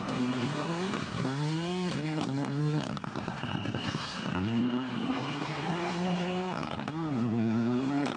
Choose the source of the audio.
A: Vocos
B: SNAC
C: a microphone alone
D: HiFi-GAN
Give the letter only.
B